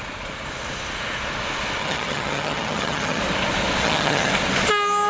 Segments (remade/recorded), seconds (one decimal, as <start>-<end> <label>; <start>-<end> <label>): 0.0-1.8 recorded; 1.8-3.2 remade; 3.2-3.8 recorded; 3.8-4.3 remade; 4.3-5.1 recorded